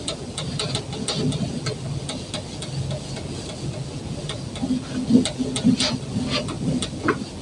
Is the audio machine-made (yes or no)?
no